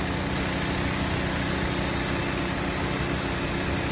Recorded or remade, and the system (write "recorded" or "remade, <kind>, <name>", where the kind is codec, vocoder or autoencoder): recorded